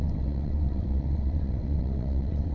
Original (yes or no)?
no